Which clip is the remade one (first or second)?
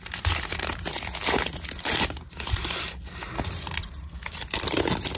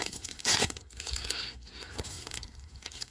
second